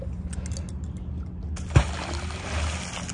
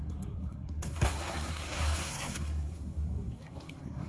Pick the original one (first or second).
first